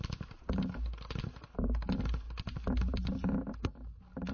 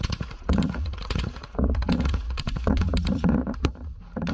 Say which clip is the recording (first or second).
first